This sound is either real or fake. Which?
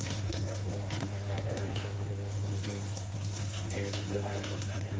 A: fake